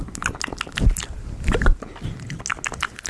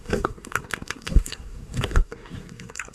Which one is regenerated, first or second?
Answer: second